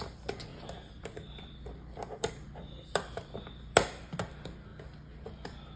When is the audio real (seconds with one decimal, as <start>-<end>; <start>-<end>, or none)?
0.0-5.8